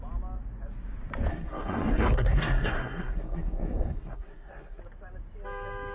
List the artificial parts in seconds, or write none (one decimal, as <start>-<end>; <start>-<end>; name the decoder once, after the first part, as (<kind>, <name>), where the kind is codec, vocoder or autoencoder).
1.3-4.8 (codec, SNAC)

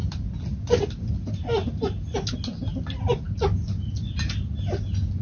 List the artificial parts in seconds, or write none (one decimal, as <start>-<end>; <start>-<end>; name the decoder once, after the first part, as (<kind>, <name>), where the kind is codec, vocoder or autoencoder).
none